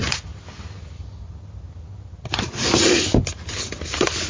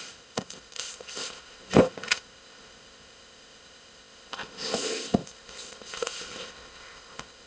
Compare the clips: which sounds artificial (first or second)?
second